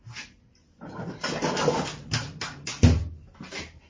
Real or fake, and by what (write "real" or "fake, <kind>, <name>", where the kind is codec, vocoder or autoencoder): real